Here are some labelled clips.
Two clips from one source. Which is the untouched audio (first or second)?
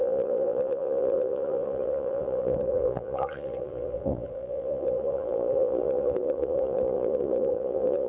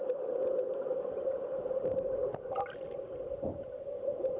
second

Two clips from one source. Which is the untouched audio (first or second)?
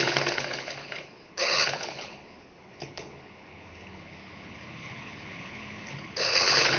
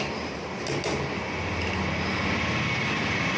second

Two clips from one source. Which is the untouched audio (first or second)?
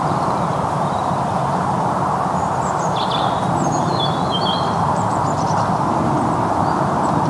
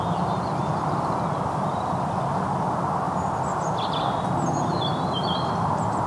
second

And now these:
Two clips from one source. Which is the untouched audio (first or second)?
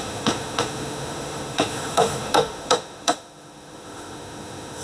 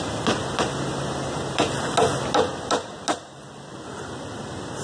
second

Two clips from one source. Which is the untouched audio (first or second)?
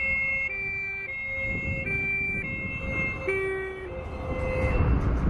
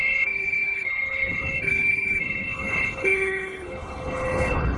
first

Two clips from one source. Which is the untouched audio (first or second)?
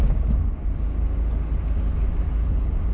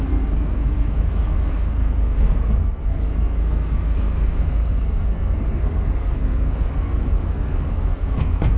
first